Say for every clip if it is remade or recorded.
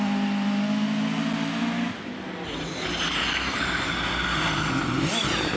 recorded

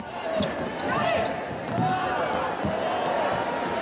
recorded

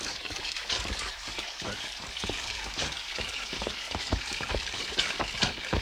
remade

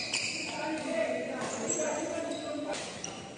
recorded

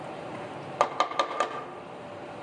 recorded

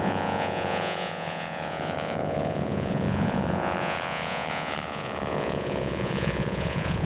remade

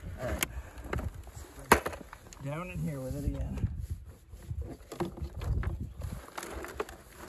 recorded